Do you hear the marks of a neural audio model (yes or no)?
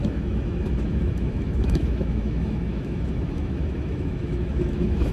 yes